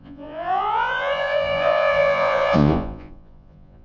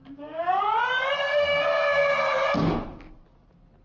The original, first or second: second